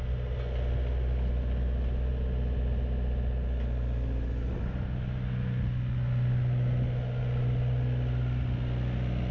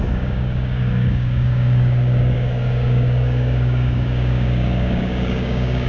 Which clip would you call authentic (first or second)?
first